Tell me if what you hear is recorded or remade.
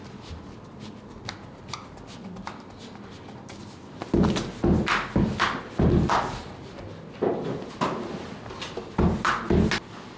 recorded